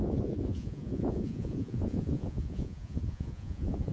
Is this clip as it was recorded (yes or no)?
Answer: no